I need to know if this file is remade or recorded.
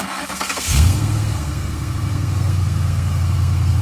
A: remade